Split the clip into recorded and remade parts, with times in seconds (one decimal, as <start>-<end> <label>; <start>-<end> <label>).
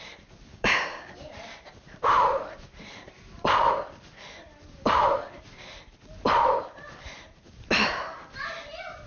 0.0-0.5 recorded; 0.5-1.1 remade; 1.1-9.1 recorded